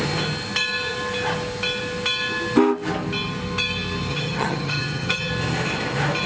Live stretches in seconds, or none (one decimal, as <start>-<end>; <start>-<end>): 0.0-4.1; 5.3-6.3